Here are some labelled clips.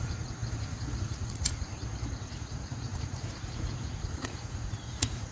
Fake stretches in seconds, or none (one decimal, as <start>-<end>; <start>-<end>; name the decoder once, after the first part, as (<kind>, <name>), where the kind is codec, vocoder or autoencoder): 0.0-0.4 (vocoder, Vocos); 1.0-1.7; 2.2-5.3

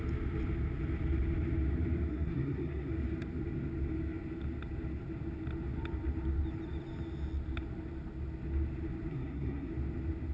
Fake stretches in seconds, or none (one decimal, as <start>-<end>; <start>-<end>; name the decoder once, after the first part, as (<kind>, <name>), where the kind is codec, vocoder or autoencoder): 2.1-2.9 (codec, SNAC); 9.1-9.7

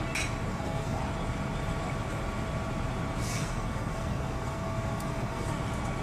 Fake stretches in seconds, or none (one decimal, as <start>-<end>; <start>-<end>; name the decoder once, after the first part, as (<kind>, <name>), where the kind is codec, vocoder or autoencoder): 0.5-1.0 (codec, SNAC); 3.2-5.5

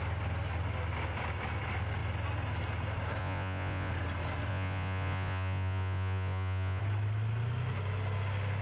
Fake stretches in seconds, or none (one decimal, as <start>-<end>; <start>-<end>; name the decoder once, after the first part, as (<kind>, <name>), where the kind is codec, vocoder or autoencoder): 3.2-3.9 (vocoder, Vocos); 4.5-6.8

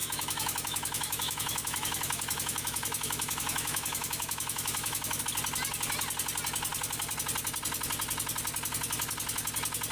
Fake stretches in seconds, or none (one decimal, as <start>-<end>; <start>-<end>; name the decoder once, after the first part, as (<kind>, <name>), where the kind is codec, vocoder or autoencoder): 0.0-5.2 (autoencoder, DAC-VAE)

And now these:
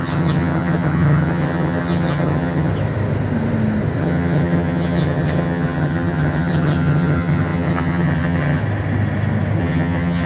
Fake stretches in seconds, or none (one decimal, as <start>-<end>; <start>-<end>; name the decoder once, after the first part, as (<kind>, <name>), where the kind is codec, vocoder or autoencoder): 0.0-2.7 (vocoder, HiFi-GAN); 4.0-8.6; 9.6-10.3